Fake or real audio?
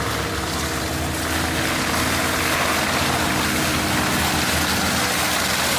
real